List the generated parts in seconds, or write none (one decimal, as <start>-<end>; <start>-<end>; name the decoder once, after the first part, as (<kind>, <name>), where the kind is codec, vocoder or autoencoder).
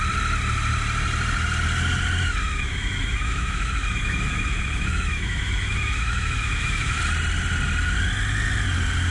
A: 2.4-7.0 (autoencoder, DAC-VAE)